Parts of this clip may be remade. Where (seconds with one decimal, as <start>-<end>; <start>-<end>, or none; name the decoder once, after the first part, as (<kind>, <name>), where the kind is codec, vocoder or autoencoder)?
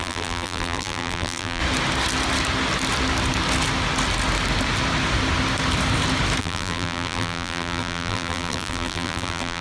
0.0-1.6 (vocoder, BigVGAN v2); 6.4-9.6